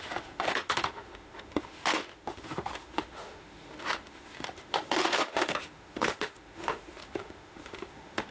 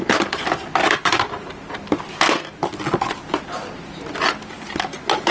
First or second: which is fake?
first